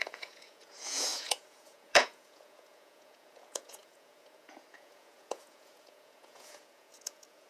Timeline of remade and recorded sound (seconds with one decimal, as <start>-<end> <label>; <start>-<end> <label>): 0.0-7.5 remade